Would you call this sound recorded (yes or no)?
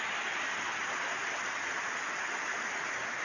yes